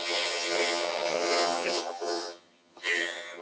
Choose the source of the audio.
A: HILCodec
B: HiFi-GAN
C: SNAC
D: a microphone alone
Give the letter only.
B